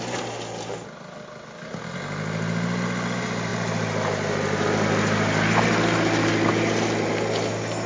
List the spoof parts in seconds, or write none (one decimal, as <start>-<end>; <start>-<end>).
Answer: none